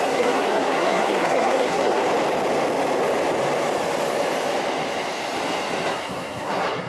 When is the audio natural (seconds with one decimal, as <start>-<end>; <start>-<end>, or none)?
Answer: 2.0-5.9